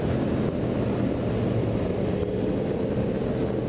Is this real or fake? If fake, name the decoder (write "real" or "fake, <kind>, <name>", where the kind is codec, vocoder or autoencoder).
real